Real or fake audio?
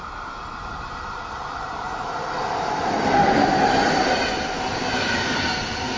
real